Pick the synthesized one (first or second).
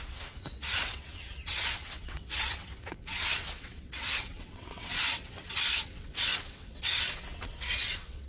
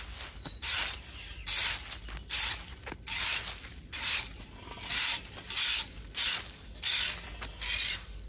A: first